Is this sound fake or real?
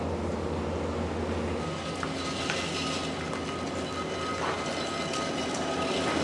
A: real